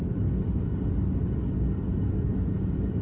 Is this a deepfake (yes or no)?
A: yes